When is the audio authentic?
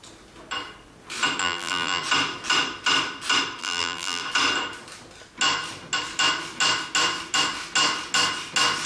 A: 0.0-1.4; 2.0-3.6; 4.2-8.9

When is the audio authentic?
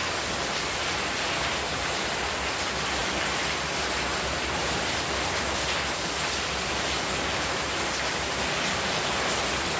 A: 0.0-9.8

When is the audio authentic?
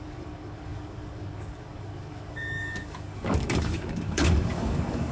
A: none